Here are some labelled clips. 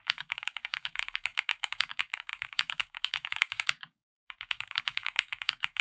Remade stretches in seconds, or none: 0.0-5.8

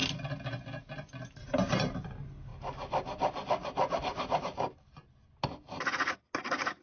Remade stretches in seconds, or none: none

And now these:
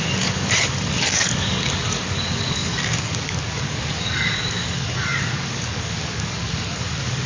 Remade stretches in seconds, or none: 0.0-7.3

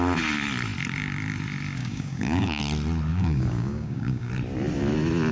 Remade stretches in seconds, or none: 1.8-2.6; 3.1-4.3

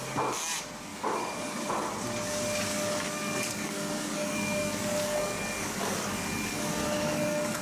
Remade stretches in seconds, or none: 0.9-1.7; 2.7-7.6

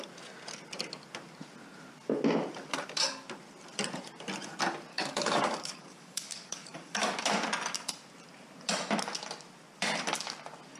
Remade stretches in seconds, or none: 4.9-7.2